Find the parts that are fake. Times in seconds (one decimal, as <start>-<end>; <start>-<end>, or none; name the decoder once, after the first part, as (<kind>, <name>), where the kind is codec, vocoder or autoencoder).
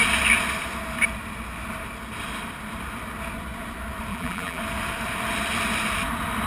4.1-4.6 (vocoder, BigVGAN v2)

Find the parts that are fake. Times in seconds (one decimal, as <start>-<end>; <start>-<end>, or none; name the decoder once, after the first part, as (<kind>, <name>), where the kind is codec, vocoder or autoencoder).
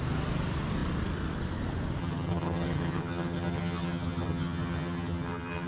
2.0-5.7 (vocoder, HiFi-GAN)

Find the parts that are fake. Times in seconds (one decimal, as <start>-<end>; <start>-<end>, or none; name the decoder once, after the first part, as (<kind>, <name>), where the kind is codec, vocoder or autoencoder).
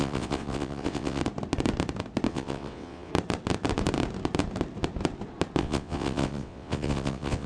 0.0-1.2 (vocoder, WaveNeXt); 2.3-3.1; 5.6-7.5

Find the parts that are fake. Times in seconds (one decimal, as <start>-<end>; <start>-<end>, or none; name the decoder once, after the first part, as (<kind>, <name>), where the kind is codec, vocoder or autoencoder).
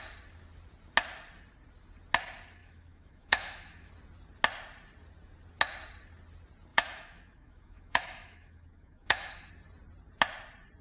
2.6-3.9 (autoencoder, DAC-VAE); 6.7-9.5